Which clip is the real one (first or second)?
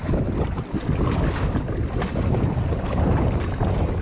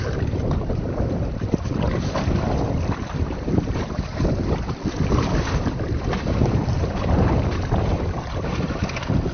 first